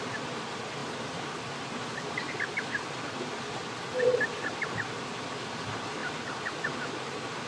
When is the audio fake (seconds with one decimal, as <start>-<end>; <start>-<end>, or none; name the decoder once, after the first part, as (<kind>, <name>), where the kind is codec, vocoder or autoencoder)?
none